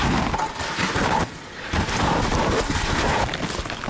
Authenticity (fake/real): real